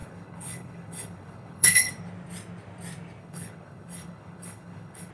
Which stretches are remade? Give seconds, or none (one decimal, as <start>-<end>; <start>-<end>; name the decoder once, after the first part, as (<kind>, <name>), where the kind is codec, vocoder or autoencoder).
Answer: 0.0-1.9 (codec, HILCodec); 3.2-5.1